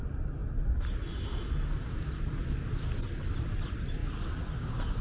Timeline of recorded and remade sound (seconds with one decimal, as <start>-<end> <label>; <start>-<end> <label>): 0.0-5.0 recorded